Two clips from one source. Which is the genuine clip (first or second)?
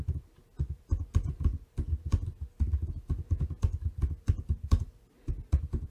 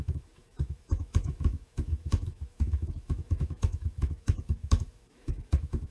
first